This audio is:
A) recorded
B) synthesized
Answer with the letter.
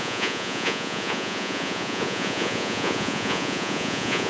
B